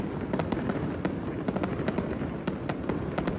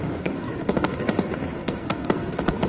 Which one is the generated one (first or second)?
second